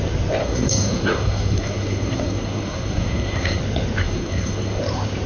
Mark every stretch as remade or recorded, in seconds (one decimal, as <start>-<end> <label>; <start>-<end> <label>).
0.0-0.4 recorded; 0.4-3.6 remade; 3.6-4.0 recorded; 4.0-4.8 remade; 4.8-5.3 recorded